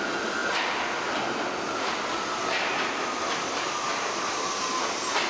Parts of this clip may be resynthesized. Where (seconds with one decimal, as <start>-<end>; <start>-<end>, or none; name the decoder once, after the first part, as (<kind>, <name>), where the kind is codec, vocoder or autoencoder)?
none